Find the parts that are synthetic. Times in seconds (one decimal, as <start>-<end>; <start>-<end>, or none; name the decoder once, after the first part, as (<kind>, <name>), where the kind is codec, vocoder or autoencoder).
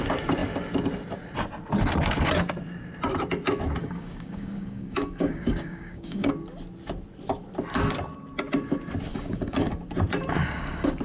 3.8-6.3 (codec, DAC); 9.1-9.7; 10.4-11.0